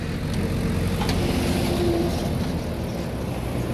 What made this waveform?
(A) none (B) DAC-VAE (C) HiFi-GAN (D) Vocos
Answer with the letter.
A